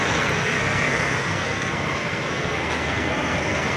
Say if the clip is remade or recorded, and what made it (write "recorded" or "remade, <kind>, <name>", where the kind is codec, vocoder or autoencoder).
remade, codec, SNAC